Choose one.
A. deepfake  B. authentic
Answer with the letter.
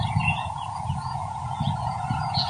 A